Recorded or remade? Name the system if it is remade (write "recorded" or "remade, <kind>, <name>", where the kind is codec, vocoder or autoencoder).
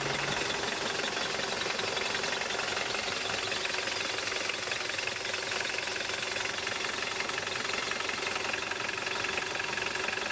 recorded